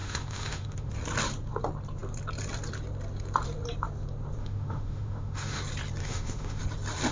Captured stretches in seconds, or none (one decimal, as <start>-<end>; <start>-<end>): 0.9-4.4; 5.6-6.0; 6.6-7.1